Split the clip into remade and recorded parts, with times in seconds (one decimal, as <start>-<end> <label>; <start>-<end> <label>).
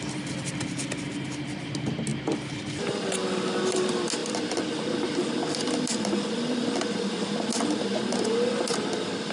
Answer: 0.0-9.3 recorded